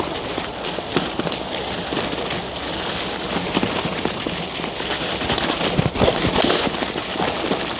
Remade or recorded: recorded